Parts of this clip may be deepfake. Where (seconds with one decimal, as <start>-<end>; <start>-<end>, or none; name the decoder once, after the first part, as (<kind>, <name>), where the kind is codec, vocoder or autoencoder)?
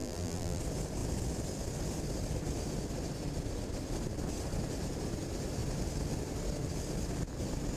0.0-0.6 (vocoder, BigVGAN v2)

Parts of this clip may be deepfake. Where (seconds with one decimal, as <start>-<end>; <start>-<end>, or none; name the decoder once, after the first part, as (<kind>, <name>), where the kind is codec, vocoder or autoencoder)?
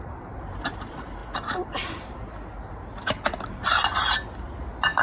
0.0-1.2 (vocoder, BigVGAN v2); 1.7-2.2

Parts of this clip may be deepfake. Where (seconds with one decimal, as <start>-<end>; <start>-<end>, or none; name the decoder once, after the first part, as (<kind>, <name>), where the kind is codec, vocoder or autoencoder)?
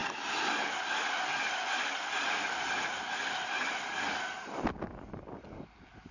2.2-2.7 (vocoder, BigVGAN v2)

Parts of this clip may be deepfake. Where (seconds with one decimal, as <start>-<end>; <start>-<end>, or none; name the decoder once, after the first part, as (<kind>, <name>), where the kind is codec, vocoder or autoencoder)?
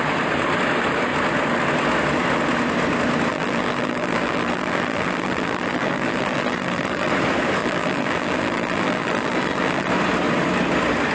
3.3-7.1 (vocoder, BigVGAN v2); 7.6-9.9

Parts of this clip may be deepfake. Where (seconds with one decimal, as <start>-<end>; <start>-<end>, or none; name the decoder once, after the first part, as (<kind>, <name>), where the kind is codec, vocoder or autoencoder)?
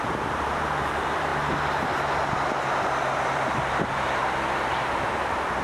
0.0-1.3 (vocoder, BigVGAN v2); 3.0-5.6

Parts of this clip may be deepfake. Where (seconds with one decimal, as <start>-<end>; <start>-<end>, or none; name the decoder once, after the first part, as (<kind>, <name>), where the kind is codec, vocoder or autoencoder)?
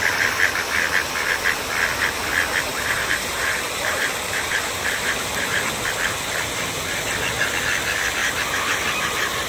2.7-5.7 (vocoder, BigVGAN v2); 8.2-9.5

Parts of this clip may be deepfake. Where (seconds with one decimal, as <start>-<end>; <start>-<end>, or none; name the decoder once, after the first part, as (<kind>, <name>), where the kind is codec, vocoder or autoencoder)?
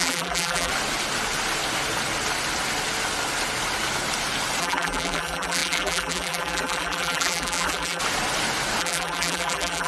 0.0-0.7 (vocoder, BigVGAN v2); 4.6-8.0; 8.8-9.9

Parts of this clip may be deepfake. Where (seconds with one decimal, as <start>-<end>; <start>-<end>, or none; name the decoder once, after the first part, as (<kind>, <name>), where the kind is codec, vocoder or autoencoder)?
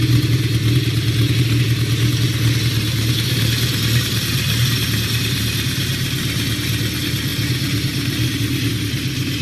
none